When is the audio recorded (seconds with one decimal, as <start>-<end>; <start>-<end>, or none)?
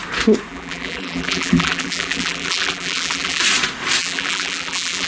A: 0.0-0.5; 3.4-4.0